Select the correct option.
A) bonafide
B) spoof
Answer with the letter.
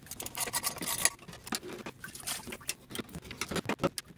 A